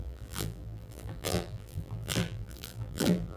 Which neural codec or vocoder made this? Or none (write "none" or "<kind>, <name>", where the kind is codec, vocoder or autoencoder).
vocoder, BigVGAN v2